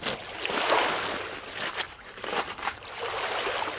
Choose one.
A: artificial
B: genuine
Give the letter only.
B